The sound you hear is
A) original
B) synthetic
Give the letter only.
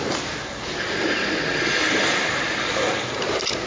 A